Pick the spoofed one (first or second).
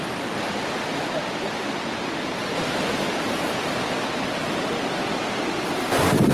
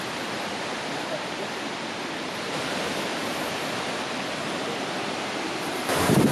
second